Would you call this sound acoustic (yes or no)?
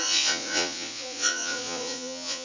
no